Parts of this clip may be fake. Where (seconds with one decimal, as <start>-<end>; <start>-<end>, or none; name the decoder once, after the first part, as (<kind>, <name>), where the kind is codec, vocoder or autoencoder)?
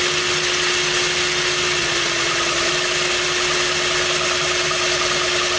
1.8-2.7 (vocoder, Vocos)